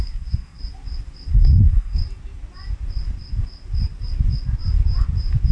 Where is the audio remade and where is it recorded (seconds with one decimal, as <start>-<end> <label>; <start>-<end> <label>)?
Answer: 0.0-0.6 remade; 0.6-1.3 recorded; 1.3-2.0 remade; 2.0-5.5 recorded